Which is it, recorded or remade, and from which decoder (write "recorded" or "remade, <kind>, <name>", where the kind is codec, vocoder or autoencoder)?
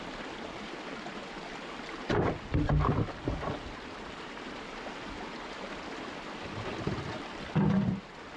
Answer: recorded